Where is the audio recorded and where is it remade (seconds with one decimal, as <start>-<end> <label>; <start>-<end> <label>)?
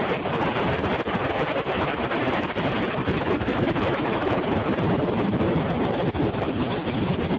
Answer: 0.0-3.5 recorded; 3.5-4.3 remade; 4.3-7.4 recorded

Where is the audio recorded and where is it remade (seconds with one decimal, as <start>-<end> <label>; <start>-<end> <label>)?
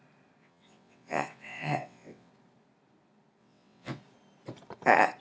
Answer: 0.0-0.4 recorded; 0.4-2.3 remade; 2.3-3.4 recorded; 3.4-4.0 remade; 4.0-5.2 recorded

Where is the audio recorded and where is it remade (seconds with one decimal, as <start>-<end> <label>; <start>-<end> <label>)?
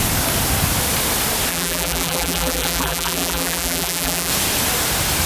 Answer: 0.0-1.5 recorded; 1.5-4.3 remade; 4.3-5.3 recorded